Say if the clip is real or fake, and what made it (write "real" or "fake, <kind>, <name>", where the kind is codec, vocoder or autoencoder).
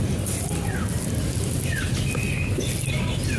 real